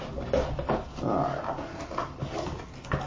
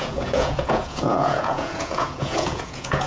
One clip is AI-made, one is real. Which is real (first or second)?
first